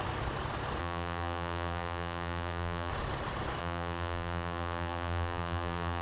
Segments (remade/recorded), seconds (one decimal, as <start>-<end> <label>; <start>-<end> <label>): 0.0-0.8 recorded; 0.8-2.9 remade; 2.9-3.6 recorded; 3.6-6.0 remade